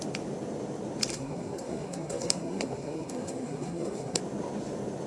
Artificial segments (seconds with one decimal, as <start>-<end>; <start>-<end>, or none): 1.1-4.2